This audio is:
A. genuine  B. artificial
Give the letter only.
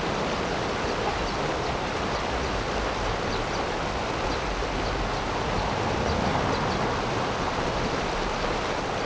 A